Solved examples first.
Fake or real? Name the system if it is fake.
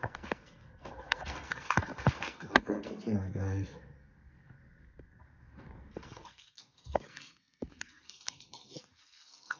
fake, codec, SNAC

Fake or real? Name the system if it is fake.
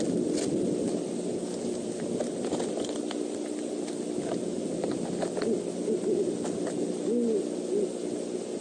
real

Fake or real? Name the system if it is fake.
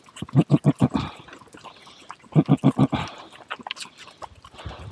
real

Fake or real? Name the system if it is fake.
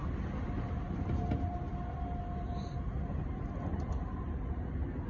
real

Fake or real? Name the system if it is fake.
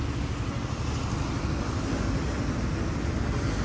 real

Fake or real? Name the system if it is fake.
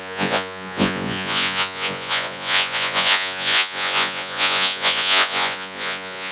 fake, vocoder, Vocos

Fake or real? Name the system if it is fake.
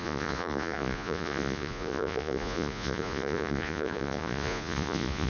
fake, vocoder, Vocos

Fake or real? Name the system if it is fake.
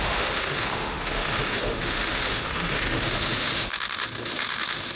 fake, autoencoder, DAC-VAE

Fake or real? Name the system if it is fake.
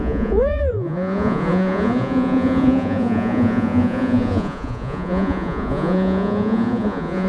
fake, vocoder, Vocos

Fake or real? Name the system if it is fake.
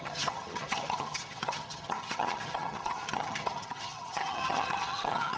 fake, vocoder, HiFi-GAN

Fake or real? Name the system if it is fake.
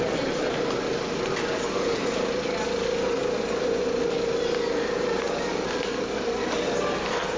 real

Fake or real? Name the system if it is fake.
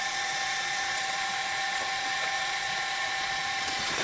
fake, vocoder, Vocos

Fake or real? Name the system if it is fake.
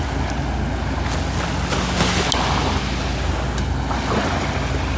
real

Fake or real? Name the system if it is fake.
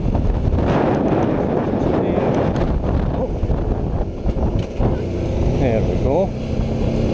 real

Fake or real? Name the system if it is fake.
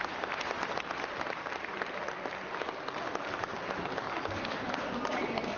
real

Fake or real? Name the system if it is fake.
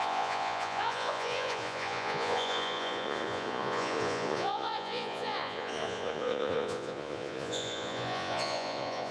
fake, vocoder, Vocos